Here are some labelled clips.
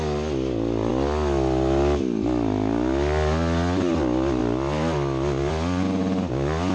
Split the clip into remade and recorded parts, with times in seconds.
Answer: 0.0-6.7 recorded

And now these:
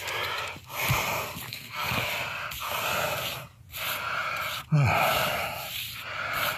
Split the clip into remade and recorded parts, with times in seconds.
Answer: 0.0-1.5 recorded; 1.5-2.1 remade; 2.1-6.6 recorded

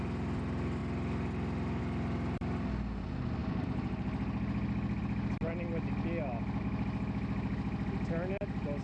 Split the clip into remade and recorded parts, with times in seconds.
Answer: 0.0-8.8 recorded

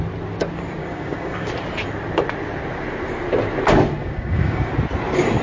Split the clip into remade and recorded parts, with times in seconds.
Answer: 0.0-0.8 recorded; 0.8-1.5 remade; 1.5-4.0 recorded; 4.0-4.7 remade; 4.7-5.4 recorded

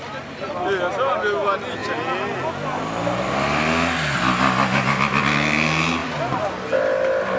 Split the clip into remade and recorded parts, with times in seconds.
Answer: 0.0-7.4 recorded

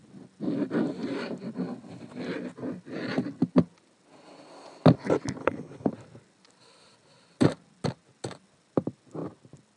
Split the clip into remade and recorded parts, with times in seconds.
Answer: 0.0-5.4 recorded; 5.4-5.9 remade; 5.9-9.8 recorded